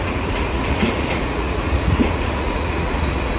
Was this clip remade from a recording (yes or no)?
yes